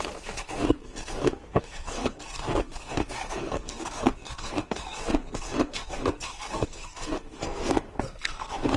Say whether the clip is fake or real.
fake